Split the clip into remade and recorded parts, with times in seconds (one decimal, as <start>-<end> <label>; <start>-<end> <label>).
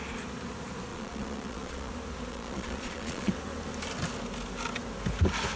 0.0-0.9 recorded; 0.9-1.9 remade; 1.9-2.3 recorded; 2.3-3.3 remade; 3.3-5.6 recorded